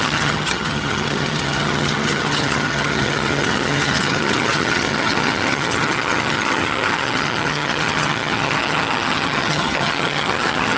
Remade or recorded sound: remade